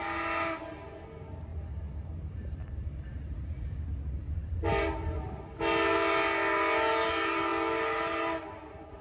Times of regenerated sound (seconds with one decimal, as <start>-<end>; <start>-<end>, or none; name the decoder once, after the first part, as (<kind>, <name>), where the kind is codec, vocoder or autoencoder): none